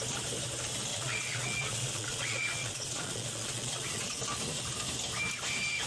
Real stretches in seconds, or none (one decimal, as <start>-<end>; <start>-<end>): 0.0-0.9; 4.2-5.9

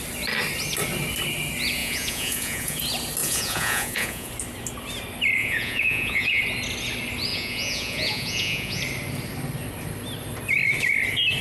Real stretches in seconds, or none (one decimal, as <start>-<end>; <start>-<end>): 0.0-1.8; 2.8-3.2; 4.3-5.4; 6.4-7.3; 8.8-11.4

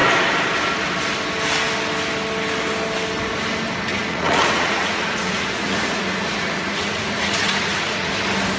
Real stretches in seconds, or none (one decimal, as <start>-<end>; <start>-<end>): 0.0-3.9; 8.1-8.6

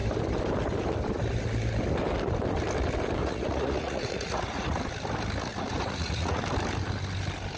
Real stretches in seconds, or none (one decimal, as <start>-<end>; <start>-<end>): 0.0-3.2; 4.8-5.5; 6.4-7.6